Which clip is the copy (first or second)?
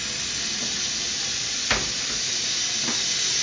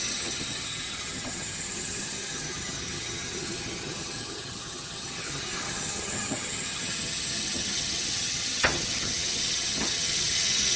second